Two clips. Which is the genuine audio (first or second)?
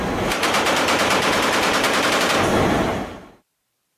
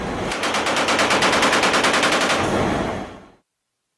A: second